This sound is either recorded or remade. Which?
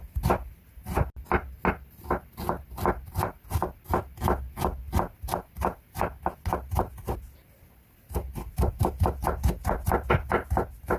recorded